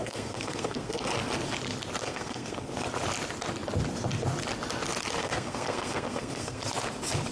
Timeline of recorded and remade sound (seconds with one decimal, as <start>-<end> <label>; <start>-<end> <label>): 0.0-1.1 remade; 1.1-2.0 recorded; 2.0-2.7 remade; 2.7-5.2 recorded; 5.2-6.6 remade; 6.6-7.3 recorded